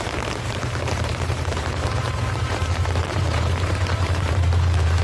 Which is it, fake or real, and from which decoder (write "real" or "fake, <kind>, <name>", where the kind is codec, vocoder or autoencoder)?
fake, vocoder, BigVGAN v2